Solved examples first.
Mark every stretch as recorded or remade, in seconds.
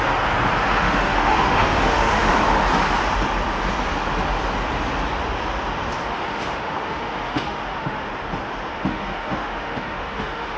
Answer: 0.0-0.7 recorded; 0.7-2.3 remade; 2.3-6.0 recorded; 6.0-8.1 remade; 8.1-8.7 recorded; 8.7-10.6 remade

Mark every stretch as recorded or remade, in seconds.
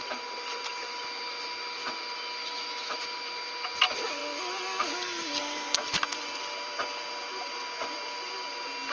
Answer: 0.0-2.4 recorded; 2.4-3.0 remade; 3.0-8.9 recorded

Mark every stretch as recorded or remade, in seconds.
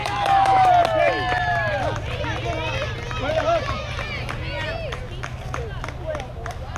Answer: 0.0-0.7 remade; 0.7-6.8 recorded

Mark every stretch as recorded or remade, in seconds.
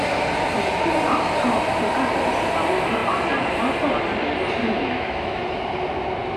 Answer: 0.0-4.6 recorded; 4.6-5.4 remade; 5.4-6.4 recorded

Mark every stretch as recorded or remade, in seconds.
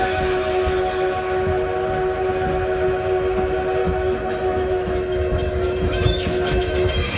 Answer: 0.0-3.8 recorded; 3.8-7.2 remade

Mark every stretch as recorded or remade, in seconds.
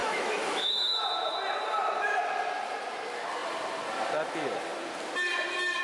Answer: 0.0-1.0 remade; 1.0-5.8 recorded